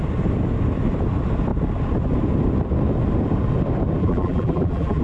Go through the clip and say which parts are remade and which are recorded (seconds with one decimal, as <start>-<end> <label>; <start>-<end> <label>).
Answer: 0.0-4.0 recorded; 4.0-5.0 remade